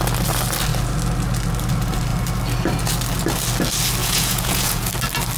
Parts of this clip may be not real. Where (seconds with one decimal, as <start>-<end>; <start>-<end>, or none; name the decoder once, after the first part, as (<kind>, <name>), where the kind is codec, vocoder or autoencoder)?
4.0-4.9 (vocoder, Vocos)